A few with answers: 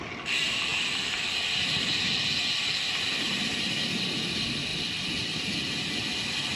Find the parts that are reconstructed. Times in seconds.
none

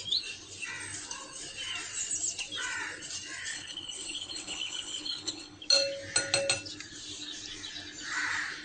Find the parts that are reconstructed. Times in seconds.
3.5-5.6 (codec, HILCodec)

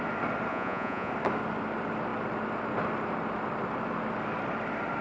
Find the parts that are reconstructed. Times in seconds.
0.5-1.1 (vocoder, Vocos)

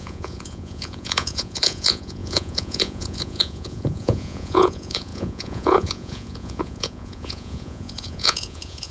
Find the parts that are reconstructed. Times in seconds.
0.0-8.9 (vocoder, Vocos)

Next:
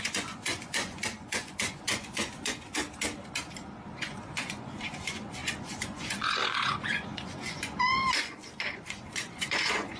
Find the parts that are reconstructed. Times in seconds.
0.0-2.7 (vocoder, Vocos); 4.0-10.0

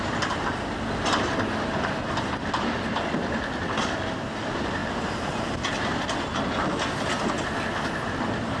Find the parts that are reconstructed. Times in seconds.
4.8-5.6 (vocoder, BigVGAN v2)